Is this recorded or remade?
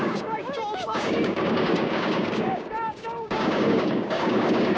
remade